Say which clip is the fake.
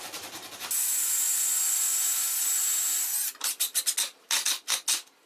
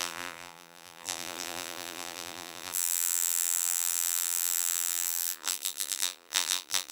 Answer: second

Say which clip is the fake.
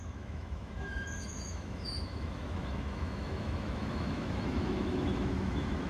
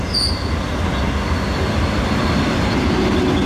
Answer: first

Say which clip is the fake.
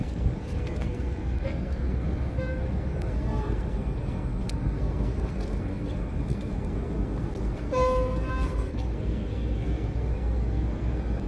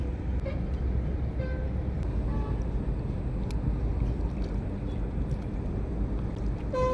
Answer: first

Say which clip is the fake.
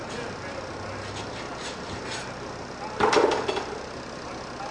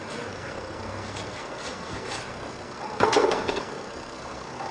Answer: second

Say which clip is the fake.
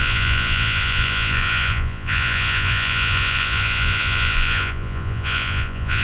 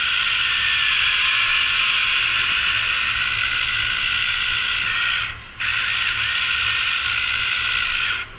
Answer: first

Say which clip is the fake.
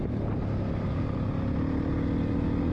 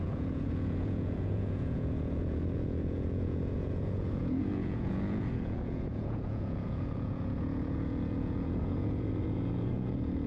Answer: second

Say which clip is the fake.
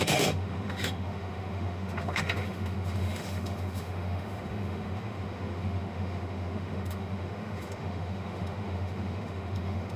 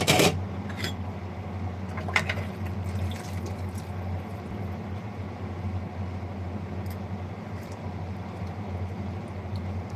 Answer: first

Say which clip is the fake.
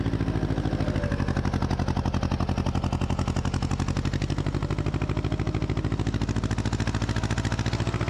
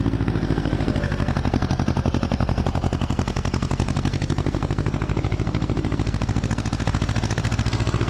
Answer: second